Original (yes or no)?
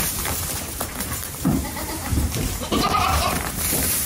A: no